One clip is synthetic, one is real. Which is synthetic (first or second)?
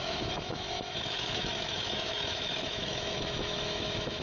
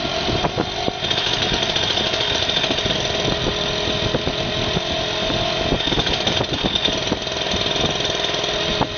first